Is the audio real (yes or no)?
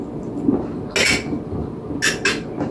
yes